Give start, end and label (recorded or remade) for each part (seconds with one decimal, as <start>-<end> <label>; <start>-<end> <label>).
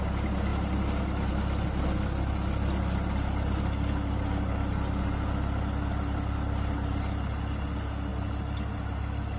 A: 0.0-9.4 recorded